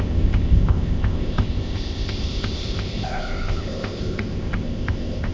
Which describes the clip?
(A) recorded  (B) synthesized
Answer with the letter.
B